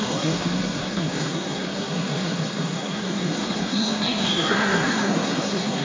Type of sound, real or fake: fake